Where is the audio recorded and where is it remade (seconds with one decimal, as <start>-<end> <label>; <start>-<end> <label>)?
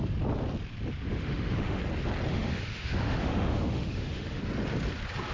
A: 0.0-1.1 recorded; 1.1-1.8 remade; 1.8-2.3 recorded; 2.3-4.4 remade; 4.4-5.3 recorded